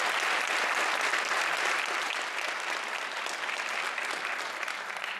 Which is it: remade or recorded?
recorded